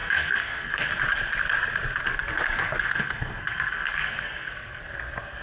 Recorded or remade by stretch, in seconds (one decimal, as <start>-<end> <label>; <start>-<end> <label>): 0.0-0.9 remade; 0.9-2.1 recorded; 2.1-4.9 remade; 4.9-5.4 recorded